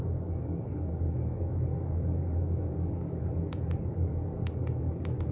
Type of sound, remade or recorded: remade